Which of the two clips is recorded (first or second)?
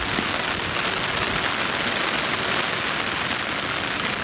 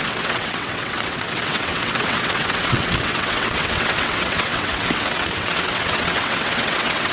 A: first